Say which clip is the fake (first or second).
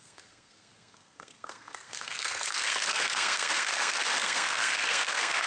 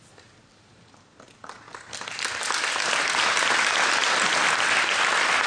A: first